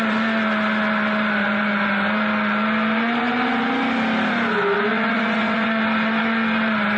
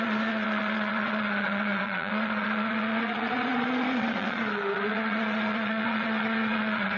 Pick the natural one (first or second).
first